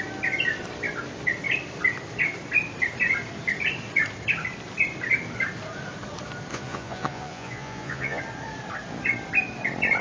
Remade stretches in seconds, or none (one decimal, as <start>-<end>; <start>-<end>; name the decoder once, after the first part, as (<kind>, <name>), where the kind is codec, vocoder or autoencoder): 6.5-8.2 (vocoder, Vocos)